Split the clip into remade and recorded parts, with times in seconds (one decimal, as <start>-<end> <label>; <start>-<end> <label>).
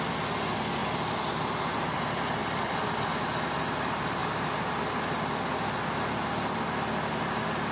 0.0-7.7 recorded